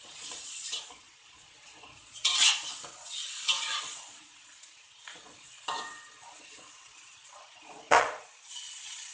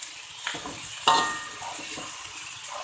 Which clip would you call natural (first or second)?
second